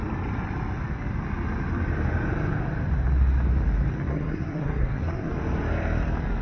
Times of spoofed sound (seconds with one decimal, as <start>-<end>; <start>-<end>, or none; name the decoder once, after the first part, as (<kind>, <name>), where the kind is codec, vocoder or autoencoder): 4.0-5.3 (codec, SNAC)